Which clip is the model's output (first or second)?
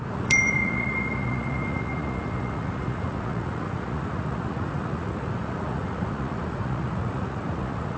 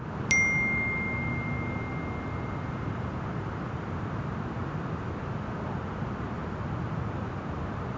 first